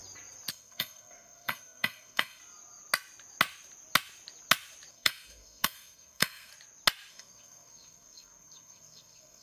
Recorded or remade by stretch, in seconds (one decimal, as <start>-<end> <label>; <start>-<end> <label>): 0.0-0.5 recorded; 0.5-2.4 remade; 2.4-4.9 recorded; 4.9-6.5 remade; 6.5-7.1 recorded; 7.1-9.4 remade